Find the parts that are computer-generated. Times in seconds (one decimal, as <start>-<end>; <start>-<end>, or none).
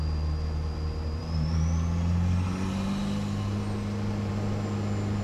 none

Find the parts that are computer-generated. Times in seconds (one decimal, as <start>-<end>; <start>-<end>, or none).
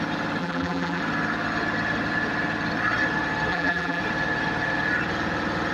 0.4-1.0; 3.5-4.0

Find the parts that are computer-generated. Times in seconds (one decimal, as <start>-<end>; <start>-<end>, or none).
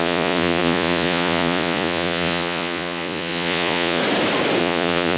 0.0-4.0; 4.6-5.2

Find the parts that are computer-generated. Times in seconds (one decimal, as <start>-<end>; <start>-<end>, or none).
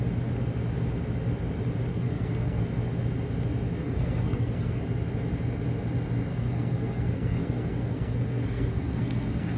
1.9-2.6; 3.8-4.8; 6.3-9.6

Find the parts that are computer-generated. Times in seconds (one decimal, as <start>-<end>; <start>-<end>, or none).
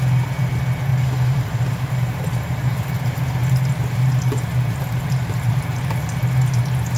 0.9-2.8; 3.4-6.1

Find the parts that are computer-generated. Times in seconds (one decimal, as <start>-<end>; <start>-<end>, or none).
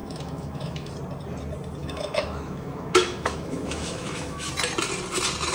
0.0-0.9; 1.8-4.5